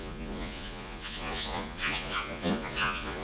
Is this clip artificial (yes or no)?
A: yes